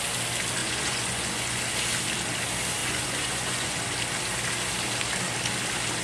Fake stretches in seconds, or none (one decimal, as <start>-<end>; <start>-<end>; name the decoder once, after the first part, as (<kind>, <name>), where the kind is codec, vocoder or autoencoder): 0.6-1.6 (vocoder, Vocos); 2.8-3.8